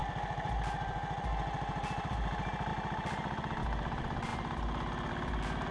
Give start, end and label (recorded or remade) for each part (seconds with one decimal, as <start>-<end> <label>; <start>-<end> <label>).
0.0-5.7 recorded